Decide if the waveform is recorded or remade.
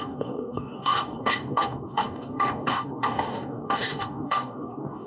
remade